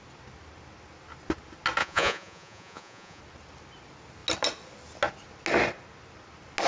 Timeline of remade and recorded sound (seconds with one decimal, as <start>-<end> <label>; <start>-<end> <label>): 0.0-1.8 recorded; 1.8-3.2 remade; 3.2-6.7 recorded